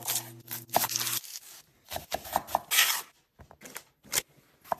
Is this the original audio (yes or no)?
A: yes